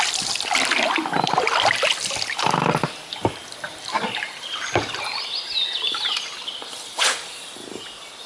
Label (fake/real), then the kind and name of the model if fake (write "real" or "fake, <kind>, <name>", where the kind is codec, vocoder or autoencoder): real